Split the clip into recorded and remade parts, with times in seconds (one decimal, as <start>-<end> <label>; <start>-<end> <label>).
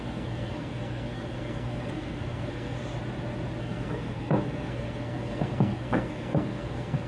0.0-2.8 remade; 2.8-3.6 recorded; 3.6-7.1 remade